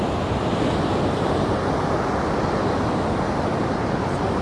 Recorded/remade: recorded